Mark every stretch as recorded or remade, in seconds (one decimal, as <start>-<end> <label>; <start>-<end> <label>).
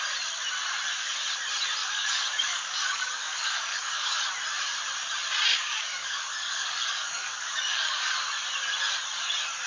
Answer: 0.0-1.8 recorded; 1.8-4.2 remade; 4.2-5.5 recorded; 5.5-8.1 remade; 8.1-9.7 recorded